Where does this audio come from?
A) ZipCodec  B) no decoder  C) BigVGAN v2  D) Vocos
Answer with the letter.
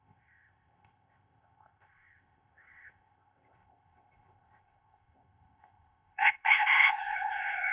A